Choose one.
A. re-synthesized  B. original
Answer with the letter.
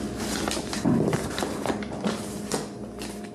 B